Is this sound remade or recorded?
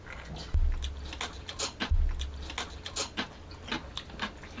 recorded